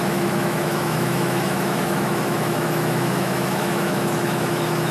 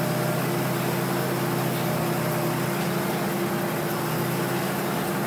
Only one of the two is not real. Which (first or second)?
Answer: first